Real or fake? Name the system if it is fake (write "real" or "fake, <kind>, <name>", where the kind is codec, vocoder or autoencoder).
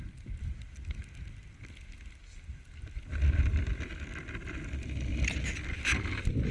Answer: real